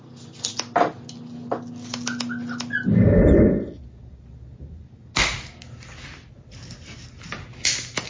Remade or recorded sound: recorded